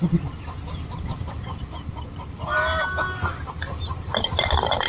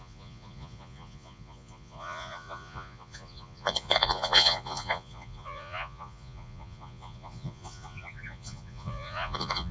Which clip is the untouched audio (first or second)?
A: first